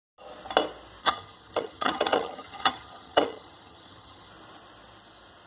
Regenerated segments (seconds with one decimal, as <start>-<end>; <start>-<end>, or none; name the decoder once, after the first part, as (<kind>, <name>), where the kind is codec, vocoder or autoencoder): 1.0-4.3 (vocoder, HiFi-GAN)